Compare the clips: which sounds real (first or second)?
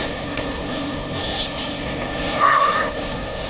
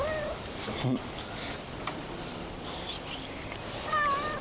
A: second